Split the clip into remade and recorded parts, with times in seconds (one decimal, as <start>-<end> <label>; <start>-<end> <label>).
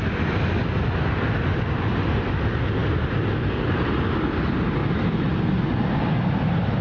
0.0-4.8 recorded; 4.8-5.4 remade; 5.4-6.8 recorded